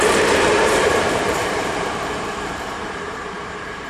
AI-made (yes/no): yes